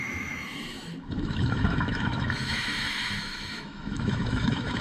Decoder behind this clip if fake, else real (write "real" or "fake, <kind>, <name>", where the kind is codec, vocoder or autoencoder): fake, autoencoder, DAC-VAE